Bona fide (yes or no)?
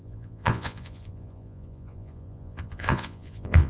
no